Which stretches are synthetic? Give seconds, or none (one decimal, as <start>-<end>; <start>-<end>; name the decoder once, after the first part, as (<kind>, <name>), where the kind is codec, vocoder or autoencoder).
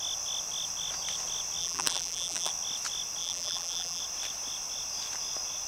1.6-2.5 (vocoder, BigVGAN v2); 3.2-4.0